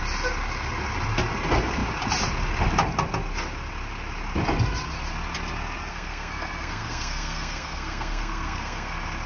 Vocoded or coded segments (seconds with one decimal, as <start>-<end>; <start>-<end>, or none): 5.9-8.9